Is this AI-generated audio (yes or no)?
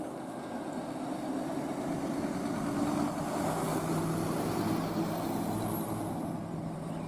no